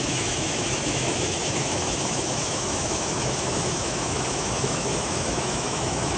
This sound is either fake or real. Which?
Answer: fake